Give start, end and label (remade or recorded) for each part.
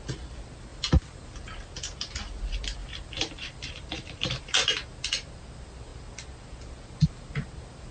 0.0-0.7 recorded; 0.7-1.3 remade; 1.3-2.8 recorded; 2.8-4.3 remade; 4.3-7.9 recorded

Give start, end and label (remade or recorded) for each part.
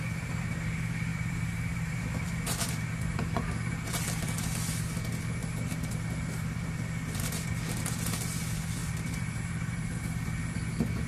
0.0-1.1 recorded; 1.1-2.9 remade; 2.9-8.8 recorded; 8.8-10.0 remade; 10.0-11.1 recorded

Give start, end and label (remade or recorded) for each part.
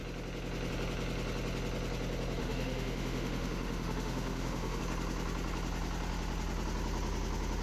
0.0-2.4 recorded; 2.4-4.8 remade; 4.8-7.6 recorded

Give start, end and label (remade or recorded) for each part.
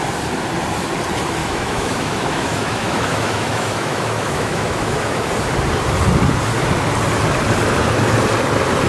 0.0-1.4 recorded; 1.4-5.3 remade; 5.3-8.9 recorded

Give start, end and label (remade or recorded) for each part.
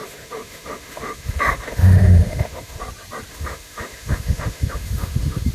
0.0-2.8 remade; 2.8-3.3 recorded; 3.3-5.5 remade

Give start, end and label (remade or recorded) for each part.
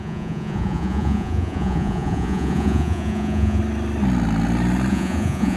0.0-3.6 remade; 3.6-4.9 recorded; 4.9-5.6 remade